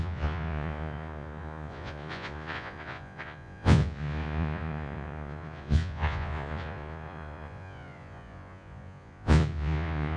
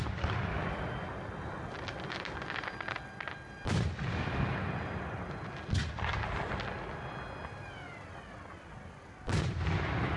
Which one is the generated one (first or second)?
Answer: first